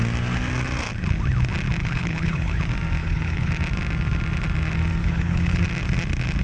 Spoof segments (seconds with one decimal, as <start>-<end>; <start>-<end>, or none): 1.8-2.6; 3.0-3.5; 5.0-5.6